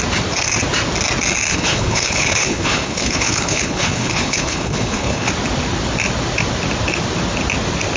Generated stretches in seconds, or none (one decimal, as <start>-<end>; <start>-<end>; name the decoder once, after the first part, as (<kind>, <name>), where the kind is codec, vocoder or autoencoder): 1.5-5.3 (codec, HILCodec)